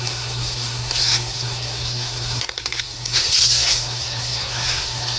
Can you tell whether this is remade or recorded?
remade